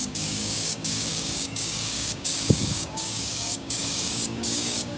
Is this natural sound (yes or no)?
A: no